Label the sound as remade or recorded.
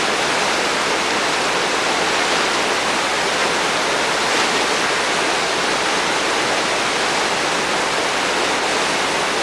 recorded